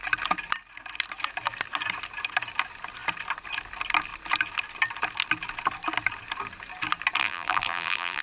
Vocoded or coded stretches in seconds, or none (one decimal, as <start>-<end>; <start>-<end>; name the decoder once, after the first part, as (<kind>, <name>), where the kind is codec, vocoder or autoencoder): 7.2-8.2 (vocoder, BigVGAN v2)